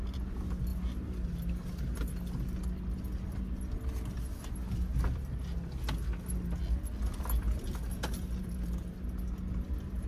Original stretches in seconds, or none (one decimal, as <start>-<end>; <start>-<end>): 0.0-7.9; 8.8-10.1